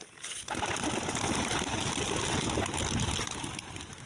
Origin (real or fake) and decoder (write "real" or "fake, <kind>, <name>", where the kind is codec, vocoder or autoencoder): real